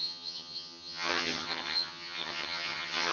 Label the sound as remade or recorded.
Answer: remade